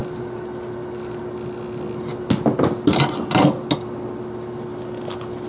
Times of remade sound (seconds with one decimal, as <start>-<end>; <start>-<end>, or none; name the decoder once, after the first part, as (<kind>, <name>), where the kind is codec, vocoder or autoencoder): none